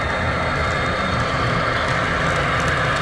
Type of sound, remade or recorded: recorded